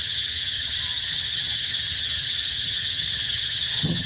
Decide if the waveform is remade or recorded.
remade